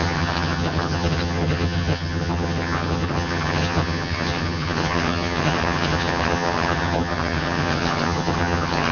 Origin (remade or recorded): remade